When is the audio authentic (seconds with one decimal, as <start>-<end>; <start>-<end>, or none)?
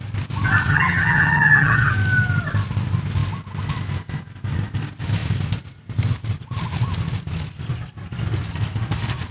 0.0-0.7; 1.9-9.3